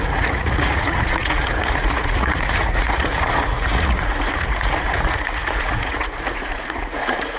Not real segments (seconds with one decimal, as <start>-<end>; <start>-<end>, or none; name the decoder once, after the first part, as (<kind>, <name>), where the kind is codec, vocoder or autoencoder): 0.0-7.4 (vocoder, Vocos)